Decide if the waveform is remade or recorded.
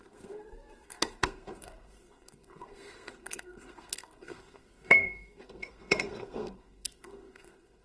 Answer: remade